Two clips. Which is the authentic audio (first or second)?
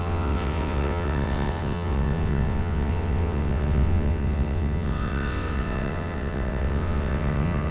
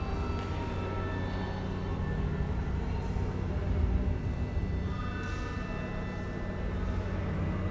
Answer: second